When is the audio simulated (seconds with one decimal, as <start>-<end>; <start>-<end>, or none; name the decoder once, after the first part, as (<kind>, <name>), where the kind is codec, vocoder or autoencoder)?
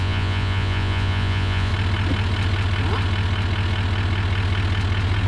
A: 0.0-1.7 (vocoder, Vocos)